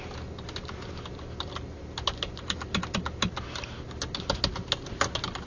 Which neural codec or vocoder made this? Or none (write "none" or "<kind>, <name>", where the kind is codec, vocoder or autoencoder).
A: none